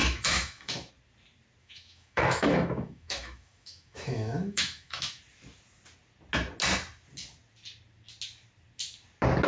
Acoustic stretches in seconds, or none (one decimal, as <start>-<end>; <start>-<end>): 0.9-1.6; 5.2-9.5